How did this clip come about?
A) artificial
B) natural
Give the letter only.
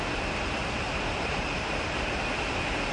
B